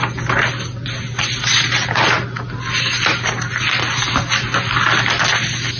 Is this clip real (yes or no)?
yes